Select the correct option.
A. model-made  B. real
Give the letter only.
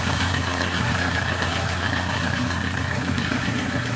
A